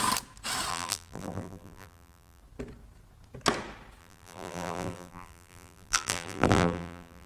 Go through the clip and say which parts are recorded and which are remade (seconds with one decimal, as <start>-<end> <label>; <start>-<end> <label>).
0.0-0.7 recorded; 0.7-2.4 remade; 2.4-4.0 recorded; 4.0-7.3 remade